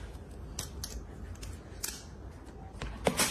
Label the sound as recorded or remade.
recorded